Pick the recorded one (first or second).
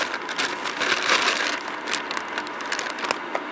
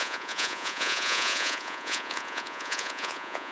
first